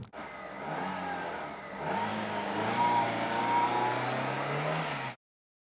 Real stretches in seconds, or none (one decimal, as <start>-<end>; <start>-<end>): 0.0-2.1; 3.4-5.7